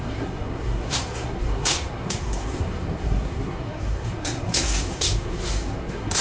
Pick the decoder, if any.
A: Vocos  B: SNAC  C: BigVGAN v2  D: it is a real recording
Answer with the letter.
B